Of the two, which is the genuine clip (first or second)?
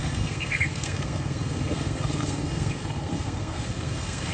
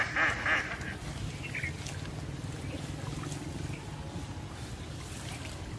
second